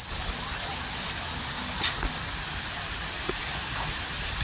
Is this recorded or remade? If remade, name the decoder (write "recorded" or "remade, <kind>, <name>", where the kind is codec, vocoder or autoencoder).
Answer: recorded